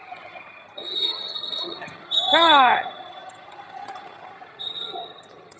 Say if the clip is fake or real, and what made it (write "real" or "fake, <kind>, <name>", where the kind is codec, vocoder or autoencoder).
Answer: fake, vocoder, HiFi-GAN